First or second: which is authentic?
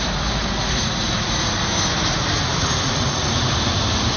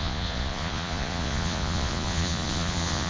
first